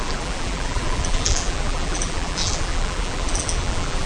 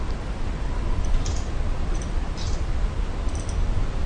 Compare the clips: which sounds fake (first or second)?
first